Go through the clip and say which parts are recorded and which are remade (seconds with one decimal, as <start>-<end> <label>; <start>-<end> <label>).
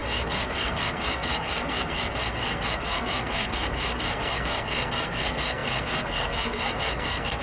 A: 0.0-7.4 remade